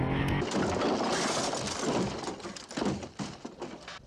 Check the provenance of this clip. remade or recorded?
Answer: recorded